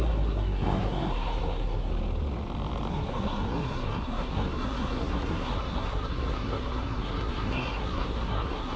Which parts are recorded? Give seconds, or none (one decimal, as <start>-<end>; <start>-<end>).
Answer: 1.9-2.9